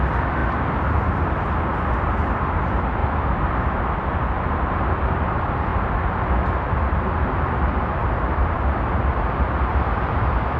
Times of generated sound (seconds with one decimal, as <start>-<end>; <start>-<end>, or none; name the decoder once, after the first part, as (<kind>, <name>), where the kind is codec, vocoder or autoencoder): 0.0-0.4 (vocoder, BigVGAN v2); 1.9-3.0; 4.7-10.6